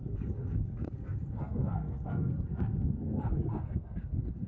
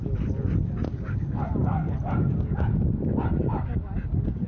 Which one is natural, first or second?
second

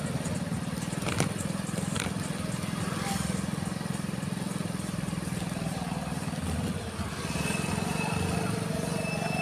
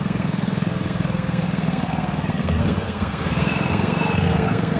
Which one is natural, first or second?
first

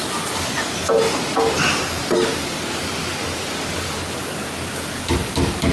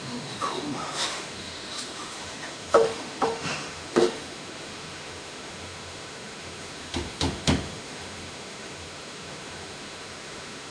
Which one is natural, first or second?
first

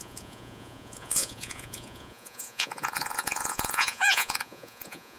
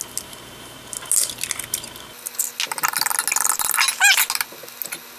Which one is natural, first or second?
second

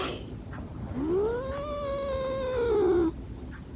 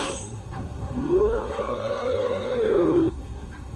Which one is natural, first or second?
first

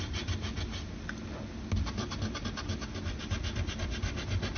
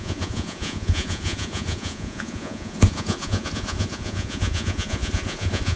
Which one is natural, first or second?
first